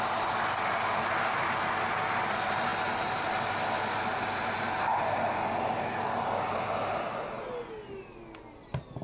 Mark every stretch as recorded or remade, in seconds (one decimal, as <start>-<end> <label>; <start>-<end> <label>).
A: 0.0-9.0 recorded